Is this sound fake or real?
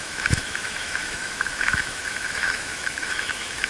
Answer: fake